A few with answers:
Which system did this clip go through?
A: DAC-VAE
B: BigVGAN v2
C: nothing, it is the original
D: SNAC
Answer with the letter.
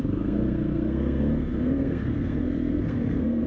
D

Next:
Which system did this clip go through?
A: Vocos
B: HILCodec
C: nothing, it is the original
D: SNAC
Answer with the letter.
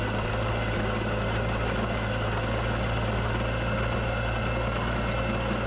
C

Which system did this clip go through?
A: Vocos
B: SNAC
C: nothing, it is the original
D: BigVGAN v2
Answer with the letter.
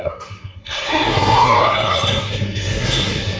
B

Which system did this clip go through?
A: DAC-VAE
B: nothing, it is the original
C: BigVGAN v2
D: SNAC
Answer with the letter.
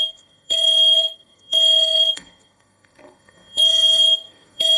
D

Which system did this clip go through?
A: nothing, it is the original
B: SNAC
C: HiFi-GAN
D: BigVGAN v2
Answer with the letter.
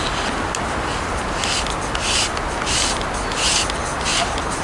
A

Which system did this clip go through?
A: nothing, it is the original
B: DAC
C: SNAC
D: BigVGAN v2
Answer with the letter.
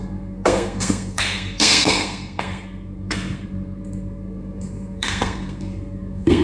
C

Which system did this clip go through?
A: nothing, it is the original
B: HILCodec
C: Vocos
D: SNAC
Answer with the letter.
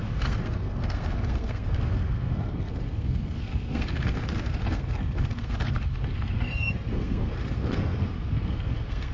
D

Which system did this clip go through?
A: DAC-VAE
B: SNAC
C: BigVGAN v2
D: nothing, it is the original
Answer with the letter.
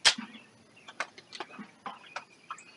D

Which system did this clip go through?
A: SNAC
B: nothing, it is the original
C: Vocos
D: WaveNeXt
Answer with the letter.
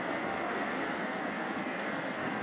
A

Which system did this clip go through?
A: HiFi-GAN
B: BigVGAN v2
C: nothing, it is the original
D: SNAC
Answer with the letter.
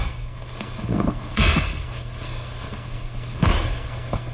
D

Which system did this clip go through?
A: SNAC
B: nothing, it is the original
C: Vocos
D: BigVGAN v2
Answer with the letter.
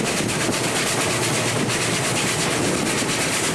B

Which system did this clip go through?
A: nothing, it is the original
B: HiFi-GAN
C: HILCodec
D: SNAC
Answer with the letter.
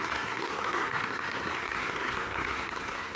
D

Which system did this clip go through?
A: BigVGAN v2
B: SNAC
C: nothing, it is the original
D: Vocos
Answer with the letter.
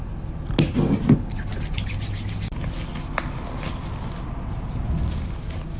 C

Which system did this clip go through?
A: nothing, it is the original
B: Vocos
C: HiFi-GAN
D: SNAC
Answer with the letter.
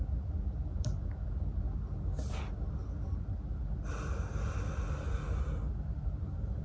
A